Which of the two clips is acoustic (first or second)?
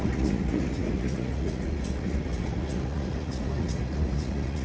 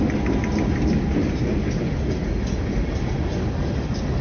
second